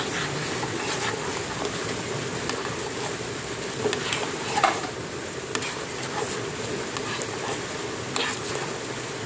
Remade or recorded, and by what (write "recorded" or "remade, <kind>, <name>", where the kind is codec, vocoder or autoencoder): recorded